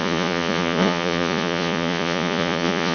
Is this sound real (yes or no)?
no